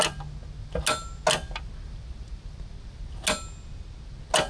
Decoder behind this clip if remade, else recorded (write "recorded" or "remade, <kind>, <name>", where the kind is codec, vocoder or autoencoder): recorded